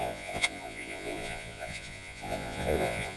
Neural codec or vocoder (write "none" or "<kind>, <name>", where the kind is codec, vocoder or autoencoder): vocoder, Vocos